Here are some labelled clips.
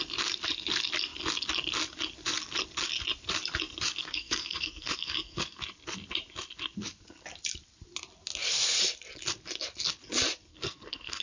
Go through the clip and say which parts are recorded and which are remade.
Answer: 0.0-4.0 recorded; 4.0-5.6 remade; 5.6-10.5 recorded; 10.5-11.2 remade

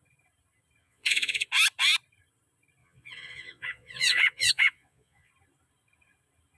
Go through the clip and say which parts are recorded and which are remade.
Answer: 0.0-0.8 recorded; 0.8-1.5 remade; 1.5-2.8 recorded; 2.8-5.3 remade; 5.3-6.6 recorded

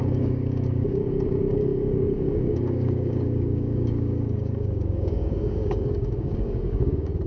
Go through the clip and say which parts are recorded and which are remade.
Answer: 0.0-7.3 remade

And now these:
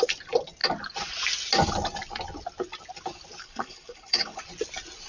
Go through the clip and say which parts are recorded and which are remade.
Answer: 0.0-3.4 recorded; 3.4-4.4 remade; 4.4-5.1 recorded

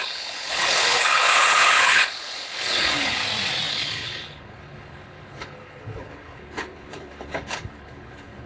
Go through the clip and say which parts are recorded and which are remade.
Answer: 0.0-3.2 remade; 3.2-3.7 recorded; 3.7-8.5 remade

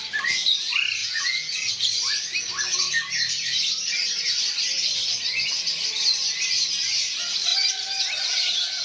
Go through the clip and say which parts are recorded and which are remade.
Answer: 0.0-1.0 recorded; 1.0-1.7 remade; 1.7-8.8 recorded

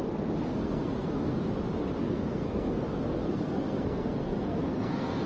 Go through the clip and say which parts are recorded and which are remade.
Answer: 0.0-0.5 recorded; 0.5-1.4 remade; 1.4-2.0 recorded; 2.0-5.3 remade